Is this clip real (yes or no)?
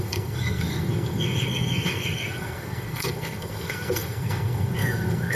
no